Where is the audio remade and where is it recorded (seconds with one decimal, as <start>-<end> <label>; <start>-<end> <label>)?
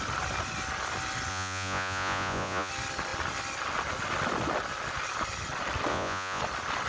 0.0-1.3 recorded; 1.3-2.7 remade; 2.7-5.9 recorded; 5.9-6.4 remade; 6.4-6.9 recorded